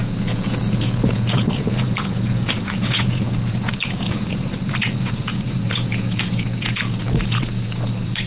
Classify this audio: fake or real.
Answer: fake